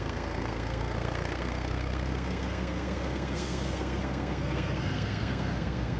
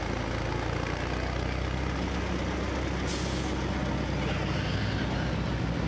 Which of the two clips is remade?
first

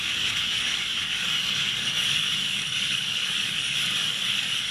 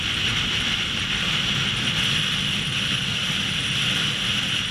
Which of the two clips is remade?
first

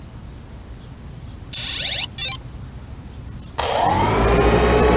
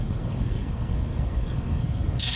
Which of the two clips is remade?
second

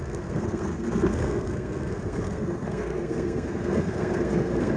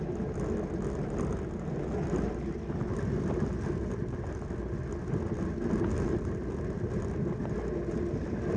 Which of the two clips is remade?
first